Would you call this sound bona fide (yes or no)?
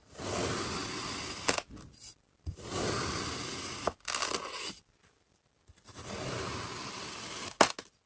yes